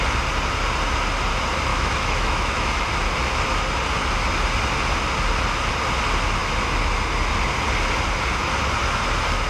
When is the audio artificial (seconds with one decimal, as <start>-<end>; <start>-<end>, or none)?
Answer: 1.7-2.7